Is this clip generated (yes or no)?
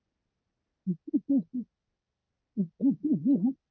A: no